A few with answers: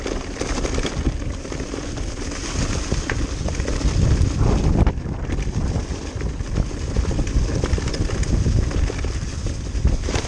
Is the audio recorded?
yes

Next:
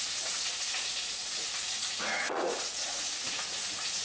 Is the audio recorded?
no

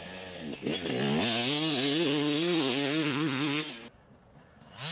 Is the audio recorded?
yes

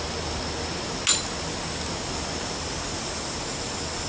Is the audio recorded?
yes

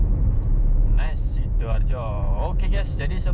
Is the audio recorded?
no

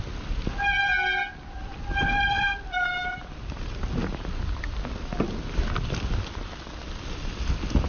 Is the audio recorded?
yes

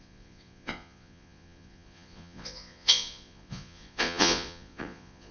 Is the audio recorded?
no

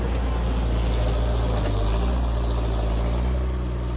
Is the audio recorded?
yes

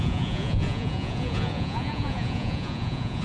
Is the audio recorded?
no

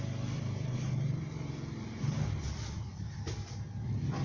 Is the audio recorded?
yes